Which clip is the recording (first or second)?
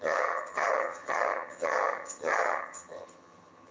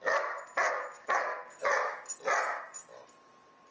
second